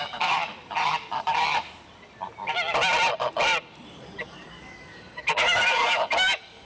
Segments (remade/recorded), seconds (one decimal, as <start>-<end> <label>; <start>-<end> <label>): 0.0-0.4 remade; 0.4-4.2 recorded; 4.2-6.7 remade